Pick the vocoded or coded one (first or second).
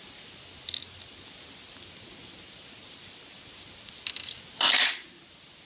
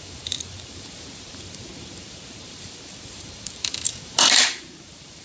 second